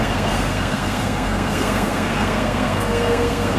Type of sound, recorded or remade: remade